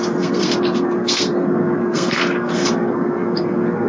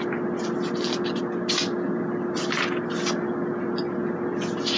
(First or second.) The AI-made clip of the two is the first